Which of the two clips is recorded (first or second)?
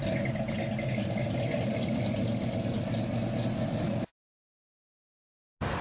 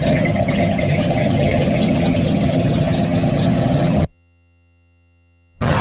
first